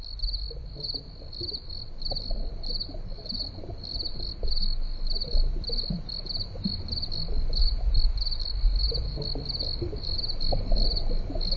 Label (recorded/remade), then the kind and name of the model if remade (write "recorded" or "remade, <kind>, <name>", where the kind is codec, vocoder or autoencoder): recorded